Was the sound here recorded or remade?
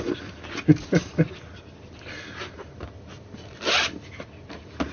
recorded